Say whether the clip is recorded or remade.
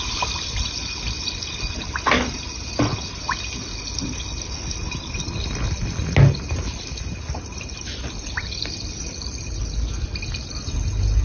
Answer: recorded